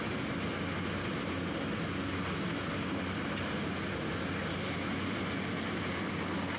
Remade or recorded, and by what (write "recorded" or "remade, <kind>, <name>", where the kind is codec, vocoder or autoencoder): recorded